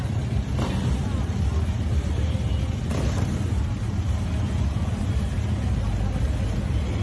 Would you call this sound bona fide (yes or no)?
yes